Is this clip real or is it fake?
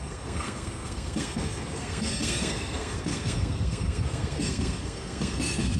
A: fake